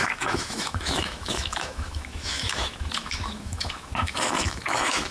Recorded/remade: remade